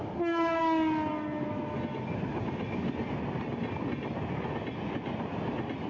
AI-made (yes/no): no